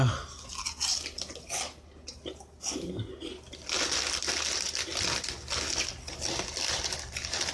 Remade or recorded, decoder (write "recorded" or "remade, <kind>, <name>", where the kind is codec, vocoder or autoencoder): recorded